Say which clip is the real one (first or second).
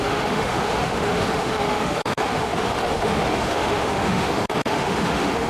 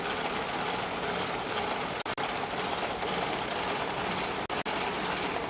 second